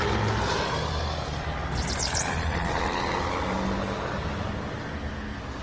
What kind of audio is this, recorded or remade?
recorded